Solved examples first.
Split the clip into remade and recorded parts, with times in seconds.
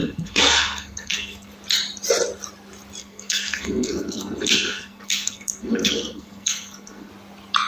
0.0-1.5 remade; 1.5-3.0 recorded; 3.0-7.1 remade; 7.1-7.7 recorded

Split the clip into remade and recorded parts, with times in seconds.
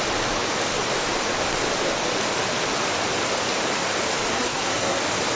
0.0-4.3 recorded; 4.3-5.0 remade; 5.0-5.4 recorded